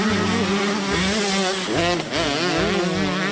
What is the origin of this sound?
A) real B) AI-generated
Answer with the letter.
A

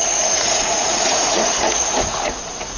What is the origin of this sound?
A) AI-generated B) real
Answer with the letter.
A